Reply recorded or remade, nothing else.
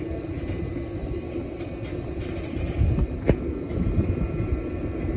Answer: recorded